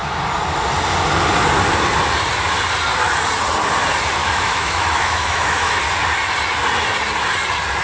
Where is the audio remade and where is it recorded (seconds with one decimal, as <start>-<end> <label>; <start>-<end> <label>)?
0.0-4.2 recorded; 4.2-5.8 remade; 5.8-7.8 recorded

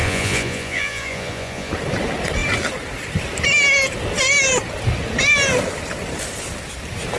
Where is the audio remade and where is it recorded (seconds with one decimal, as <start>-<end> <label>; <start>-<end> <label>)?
0.0-1.7 remade; 1.7-7.2 recorded

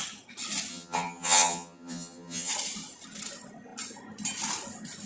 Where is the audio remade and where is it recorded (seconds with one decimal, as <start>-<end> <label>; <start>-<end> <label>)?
0.0-0.7 recorded; 0.7-2.5 remade; 2.5-5.1 recorded

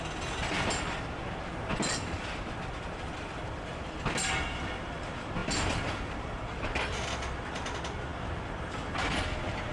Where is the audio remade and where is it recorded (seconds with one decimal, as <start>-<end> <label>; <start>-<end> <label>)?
0.0-1.7 recorded; 1.7-2.9 remade; 2.9-9.7 recorded

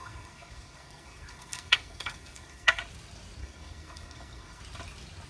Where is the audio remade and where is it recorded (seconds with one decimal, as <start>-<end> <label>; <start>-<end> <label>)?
0.0-2.8 remade; 2.8-3.4 recorded; 3.4-4.6 remade; 4.6-5.3 recorded